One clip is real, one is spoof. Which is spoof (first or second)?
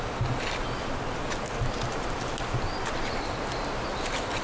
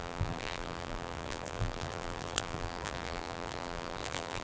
second